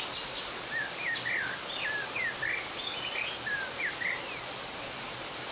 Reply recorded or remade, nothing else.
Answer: recorded